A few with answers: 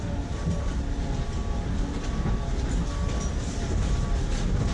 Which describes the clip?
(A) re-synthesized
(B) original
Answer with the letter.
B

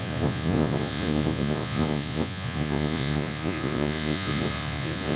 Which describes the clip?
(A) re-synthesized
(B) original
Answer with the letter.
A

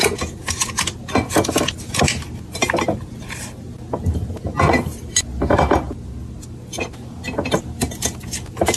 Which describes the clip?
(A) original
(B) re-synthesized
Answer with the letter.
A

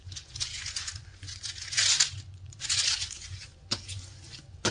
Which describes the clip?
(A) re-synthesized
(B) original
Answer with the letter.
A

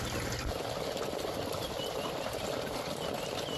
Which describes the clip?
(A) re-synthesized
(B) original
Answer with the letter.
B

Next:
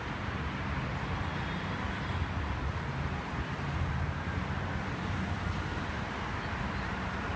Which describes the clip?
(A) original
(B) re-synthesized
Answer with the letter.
A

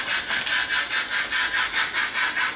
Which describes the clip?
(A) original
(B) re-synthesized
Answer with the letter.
A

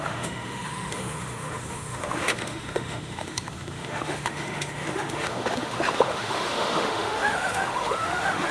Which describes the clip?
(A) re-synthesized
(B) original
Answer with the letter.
A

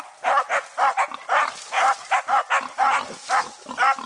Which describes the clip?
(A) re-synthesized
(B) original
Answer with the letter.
B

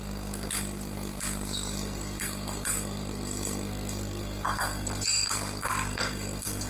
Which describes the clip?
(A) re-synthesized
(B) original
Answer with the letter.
A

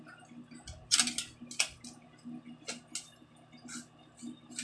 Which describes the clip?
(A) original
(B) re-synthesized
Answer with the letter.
A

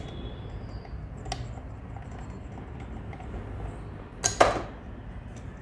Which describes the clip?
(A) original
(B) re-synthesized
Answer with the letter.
A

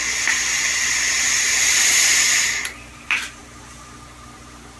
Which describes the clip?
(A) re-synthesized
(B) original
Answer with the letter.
A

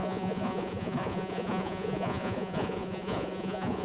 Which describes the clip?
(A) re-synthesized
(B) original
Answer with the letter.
A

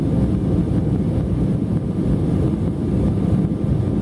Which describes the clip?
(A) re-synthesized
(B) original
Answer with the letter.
B